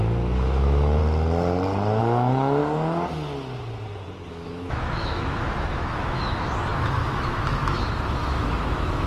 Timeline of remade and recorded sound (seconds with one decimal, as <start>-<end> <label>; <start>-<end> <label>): 0.0-1.0 remade; 1.0-2.0 recorded; 2.0-2.6 remade; 2.6-4.3 recorded; 4.3-9.1 remade